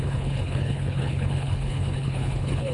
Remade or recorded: remade